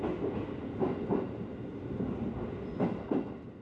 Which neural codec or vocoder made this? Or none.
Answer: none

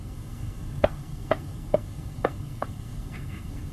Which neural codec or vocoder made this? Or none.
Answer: codec, SNAC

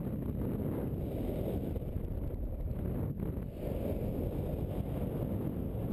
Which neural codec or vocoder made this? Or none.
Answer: none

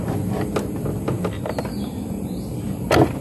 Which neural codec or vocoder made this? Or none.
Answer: none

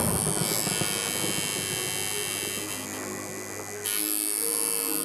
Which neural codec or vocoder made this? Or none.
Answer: none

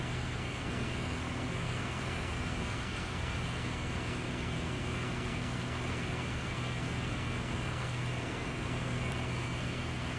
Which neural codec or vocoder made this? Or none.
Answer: codec, SNAC